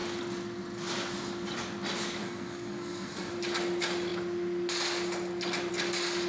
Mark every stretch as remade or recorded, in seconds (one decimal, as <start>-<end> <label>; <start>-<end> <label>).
0.0-2.2 recorded; 2.2-3.3 remade; 3.3-6.3 recorded